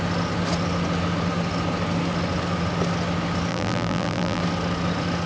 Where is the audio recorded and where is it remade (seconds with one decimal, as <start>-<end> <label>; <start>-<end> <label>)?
0.0-3.5 recorded; 3.5-4.4 remade; 4.4-5.3 recorded